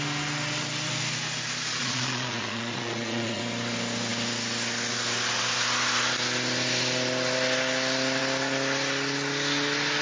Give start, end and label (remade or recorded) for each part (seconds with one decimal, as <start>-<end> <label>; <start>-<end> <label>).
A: 0.0-1.8 recorded; 1.8-3.4 remade; 3.4-10.0 recorded